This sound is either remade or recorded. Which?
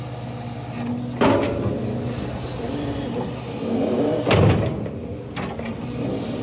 recorded